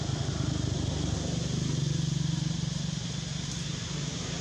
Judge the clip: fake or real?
real